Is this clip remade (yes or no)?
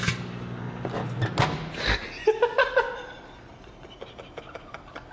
no